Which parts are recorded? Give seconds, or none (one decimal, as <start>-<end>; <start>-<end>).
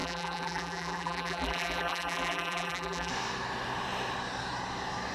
3.1-5.1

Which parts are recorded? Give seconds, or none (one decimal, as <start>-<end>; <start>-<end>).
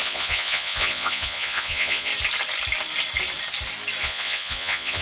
2.1-4.0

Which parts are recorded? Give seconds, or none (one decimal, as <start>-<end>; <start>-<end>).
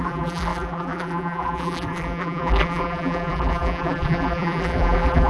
none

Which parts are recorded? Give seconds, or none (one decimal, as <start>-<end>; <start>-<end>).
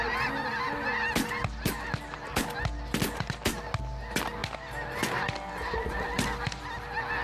0.0-7.2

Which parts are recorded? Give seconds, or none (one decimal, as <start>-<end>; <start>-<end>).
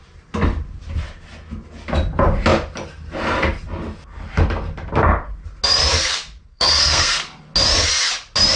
0.0-6.5; 7.2-8.6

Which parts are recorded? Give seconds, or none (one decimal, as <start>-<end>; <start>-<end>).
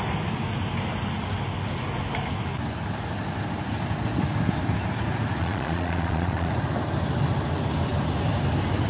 0.0-5.4; 6.5-8.9